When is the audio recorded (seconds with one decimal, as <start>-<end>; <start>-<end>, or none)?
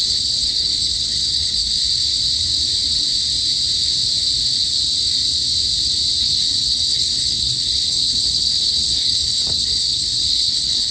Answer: 1.8-6.2